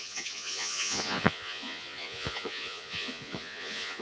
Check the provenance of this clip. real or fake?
fake